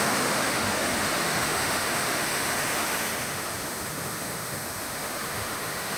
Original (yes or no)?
no